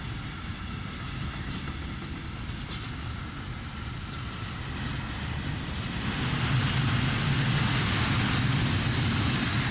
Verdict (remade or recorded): recorded